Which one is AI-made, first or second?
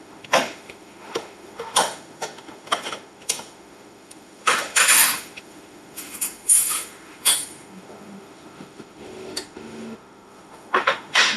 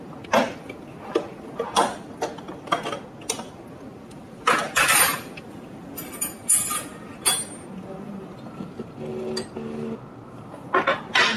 first